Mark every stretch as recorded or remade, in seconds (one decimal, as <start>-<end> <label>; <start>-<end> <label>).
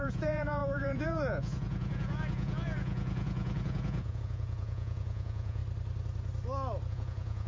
0.0-5.6 remade; 5.6-6.9 recorded; 6.9-7.5 remade